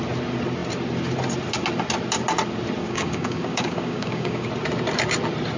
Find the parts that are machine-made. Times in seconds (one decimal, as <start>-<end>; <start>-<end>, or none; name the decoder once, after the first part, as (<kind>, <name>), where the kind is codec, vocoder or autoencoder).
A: 2.8-4.5 (codec, DAC)